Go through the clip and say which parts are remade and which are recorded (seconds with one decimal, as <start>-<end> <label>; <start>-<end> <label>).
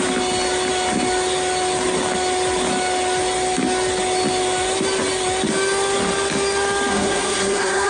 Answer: 0.0-6.9 recorded; 6.9-7.9 remade